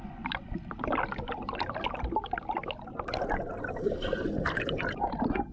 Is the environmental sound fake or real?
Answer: real